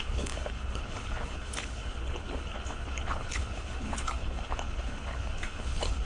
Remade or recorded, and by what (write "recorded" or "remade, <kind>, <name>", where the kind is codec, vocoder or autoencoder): remade, codec, HILCodec